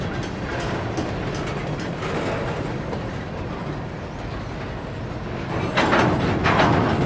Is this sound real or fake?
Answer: real